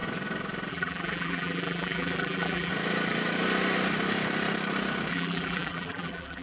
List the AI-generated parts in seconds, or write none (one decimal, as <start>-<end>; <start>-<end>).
0.7-2.7; 5.1-6.4